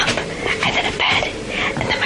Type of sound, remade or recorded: remade